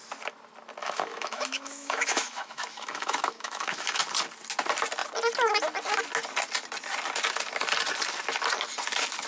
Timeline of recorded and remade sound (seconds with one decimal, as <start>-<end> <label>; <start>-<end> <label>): 0.0-0.8 recorded; 0.8-4.0 remade; 4.0-9.3 recorded